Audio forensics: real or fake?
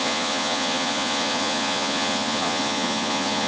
fake